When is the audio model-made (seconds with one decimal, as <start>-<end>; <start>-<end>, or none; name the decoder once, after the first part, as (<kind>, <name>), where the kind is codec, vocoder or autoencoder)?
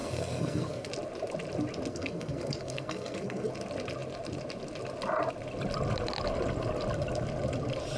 0.0-0.9 (codec, SNAC); 1.9-3.5